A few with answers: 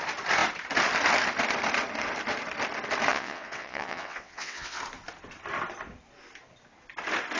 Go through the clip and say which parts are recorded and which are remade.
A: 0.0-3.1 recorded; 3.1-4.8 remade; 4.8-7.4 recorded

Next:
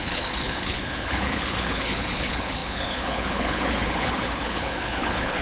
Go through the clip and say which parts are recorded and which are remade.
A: 0.0-5.4 remade

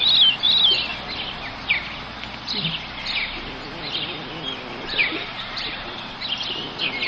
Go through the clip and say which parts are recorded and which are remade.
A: 0.0-7.1 recorded